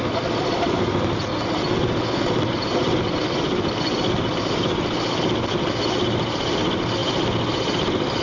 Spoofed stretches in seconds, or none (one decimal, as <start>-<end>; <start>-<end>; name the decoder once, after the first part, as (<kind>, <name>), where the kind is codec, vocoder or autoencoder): none